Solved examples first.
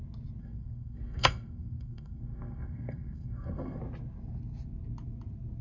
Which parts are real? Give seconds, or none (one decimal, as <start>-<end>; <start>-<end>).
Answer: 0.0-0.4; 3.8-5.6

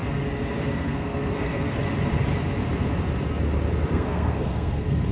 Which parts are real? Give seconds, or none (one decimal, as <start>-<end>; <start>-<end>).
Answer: 0.0-0.6; 1.8-3.9

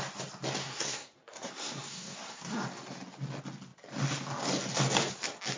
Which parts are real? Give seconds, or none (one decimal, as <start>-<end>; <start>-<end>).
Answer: 0.0-0.6; 2.5-5.6

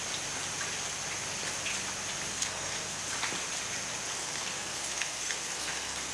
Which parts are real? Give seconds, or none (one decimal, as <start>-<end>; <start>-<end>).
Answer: 0.0-2.3; 3.0-4.2

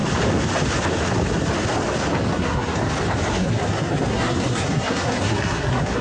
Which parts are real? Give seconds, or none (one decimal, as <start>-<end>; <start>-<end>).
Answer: 0.0-2.3; 2.8-3.3

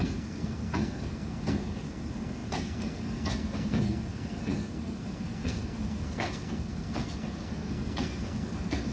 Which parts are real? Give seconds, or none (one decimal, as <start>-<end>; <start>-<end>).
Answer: none